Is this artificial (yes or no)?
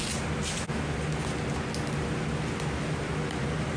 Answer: no